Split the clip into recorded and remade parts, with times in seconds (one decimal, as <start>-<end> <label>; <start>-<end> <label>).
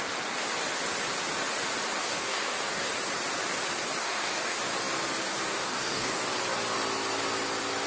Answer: 0.0-2.0 recorded; 2.0-2.9 remade; 2.9-4.0 recorded; 4.0-4.6 remade; 4.6-5.5 recorded; 5.5-6.2 remade; 6.2-7.9 recorded